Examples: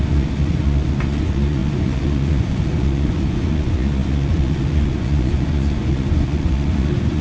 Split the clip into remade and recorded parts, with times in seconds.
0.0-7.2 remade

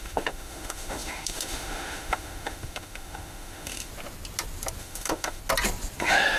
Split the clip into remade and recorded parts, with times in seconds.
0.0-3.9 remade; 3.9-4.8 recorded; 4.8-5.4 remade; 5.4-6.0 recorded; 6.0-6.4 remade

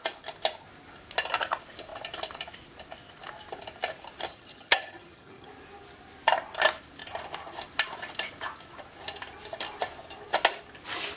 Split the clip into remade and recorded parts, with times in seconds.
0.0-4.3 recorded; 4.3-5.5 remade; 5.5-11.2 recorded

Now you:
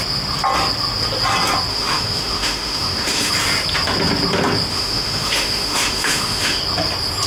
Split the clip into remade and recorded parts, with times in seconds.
0.0-1.7 recorded; 1.7-3.3 remade; 3.3-4.7 recorded; 4.7-6.6 remade; 6.6-7.3 recorded

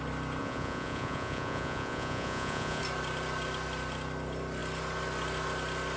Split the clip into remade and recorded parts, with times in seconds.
0.0-0.4 recorded; 0.4-2.8 remade; 2.8-6.0 recorded

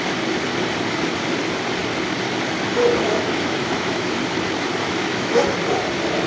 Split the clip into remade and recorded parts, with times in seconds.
0.0-3.0 recorded; 3.0-4.2 remade; 4.2-4.8 recorded; 4.8-5.4 remade; 5.4-6.3 recorded

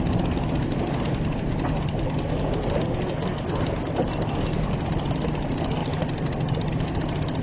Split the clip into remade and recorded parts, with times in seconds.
0.0-7.4 recorded